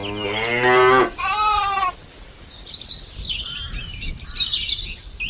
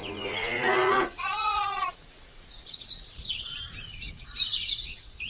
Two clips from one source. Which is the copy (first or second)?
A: second